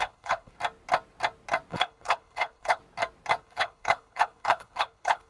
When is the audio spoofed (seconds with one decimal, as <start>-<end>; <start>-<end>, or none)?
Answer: 0.0-0.5; 1.7-2.8; 3.4-5.3